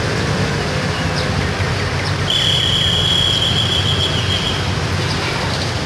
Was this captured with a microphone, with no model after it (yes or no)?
yes